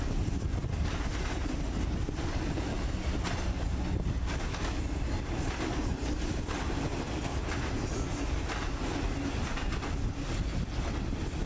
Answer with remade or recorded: recorded